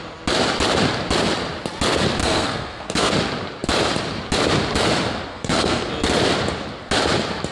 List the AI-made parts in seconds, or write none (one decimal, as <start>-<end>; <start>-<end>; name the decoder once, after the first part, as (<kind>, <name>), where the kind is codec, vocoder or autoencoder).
2.2-3.1 (codec, SNAC); 5.3-5.9